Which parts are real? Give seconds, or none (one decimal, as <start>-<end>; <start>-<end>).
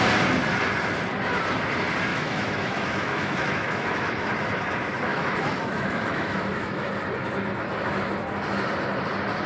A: 0.0-2.1; 4.3-5.1; 6.9-9.5